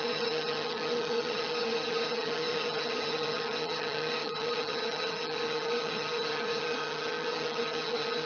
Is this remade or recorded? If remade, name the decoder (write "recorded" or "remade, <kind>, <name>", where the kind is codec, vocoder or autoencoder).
remade, vocoder, HiFi-GAN